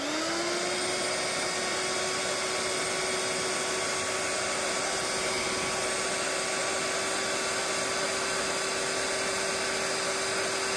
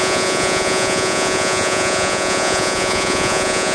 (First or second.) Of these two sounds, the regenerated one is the second